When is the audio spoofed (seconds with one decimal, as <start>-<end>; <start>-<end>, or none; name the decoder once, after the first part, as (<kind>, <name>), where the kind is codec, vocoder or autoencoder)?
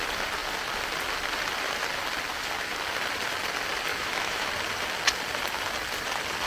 3.9-4.5 (autoencoder, DAC-VAE)